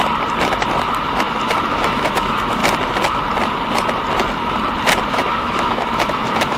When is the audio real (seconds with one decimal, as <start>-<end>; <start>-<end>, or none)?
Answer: 0.0-1.7; 2.6-5.1